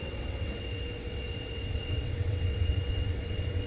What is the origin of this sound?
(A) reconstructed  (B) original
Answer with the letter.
A